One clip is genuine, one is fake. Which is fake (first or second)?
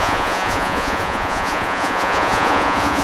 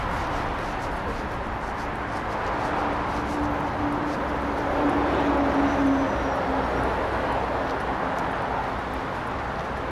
first